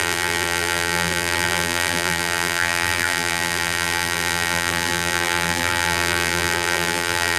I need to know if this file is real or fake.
fake